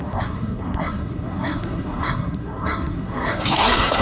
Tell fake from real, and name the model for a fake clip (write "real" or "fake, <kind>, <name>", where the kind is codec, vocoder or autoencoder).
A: fake, codec, SNAC